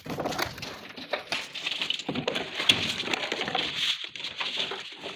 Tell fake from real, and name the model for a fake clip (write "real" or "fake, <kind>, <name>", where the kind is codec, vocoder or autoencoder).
real